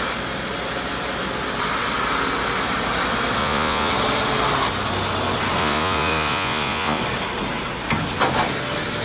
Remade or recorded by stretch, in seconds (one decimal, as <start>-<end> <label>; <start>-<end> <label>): 0.0-3.4 recorded; 3.4-3.9 remade; 3.9-5.6 recorded; 5.6-7.0 remade; 7.0-9.0 recorded